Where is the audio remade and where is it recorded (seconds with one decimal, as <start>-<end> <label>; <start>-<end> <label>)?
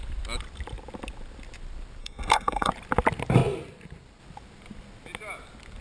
0.0-2.0 recorded; 2.0-2.7 remade; 2.7-5.8 recorded